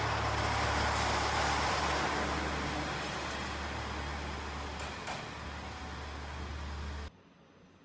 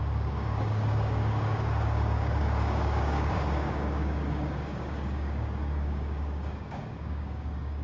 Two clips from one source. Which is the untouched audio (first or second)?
first